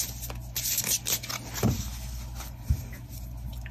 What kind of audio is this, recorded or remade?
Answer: recorded